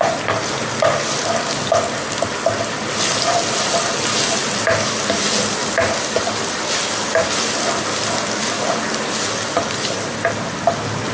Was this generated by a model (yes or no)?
no